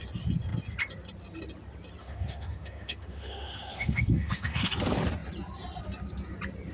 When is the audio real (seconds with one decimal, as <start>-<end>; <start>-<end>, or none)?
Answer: 0.0-2.0; 4.7-6.7